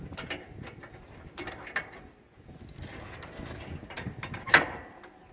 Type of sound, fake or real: real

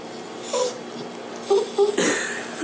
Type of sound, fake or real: real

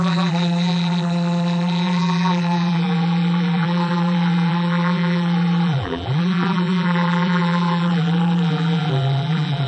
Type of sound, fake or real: fake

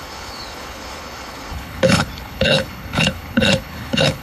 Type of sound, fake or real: fake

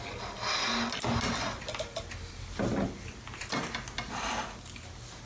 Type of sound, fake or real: real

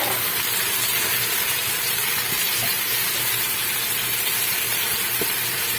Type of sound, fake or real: fake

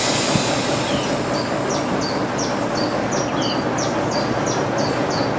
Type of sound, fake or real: real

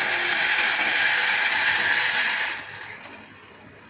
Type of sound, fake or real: real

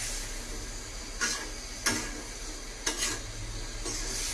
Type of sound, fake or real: real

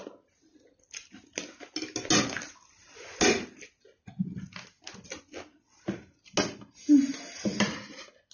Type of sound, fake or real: real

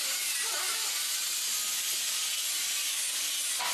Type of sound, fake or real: real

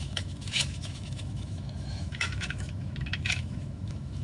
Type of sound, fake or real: fake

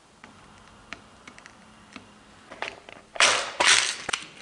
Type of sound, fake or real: fake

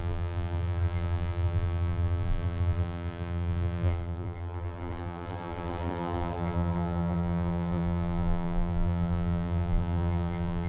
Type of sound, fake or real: fake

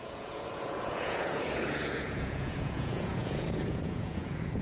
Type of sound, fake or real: fake